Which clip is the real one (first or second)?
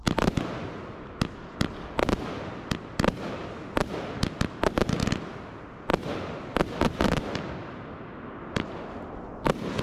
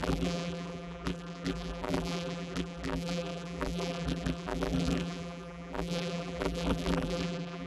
first